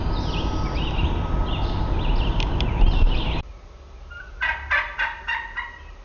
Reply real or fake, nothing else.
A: real